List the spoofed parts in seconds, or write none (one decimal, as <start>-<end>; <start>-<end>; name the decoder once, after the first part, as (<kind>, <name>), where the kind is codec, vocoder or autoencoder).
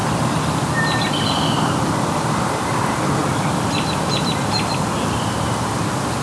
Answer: 0.0-6.2 (vocoder, BigVGAN v2)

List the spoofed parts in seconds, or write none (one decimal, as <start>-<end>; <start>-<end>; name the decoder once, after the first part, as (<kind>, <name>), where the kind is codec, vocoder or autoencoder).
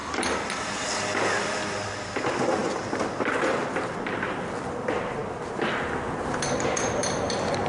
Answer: none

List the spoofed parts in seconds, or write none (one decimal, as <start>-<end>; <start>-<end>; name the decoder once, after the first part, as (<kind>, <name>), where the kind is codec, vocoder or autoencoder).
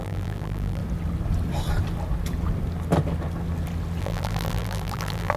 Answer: 0.0-0.8 (vocoder, BigVGAN v2); 4.0-5.4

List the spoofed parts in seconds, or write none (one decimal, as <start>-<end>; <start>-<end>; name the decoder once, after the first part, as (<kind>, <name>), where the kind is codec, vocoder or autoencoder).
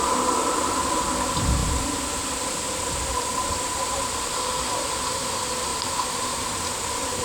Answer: 5.7-6.8 (vocoder, BigVGAN v2)